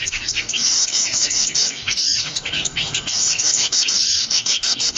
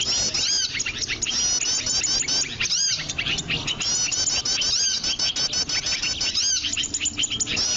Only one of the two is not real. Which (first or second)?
first